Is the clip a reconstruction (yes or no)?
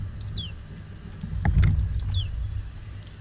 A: no